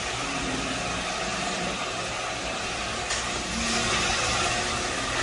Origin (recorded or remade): recorded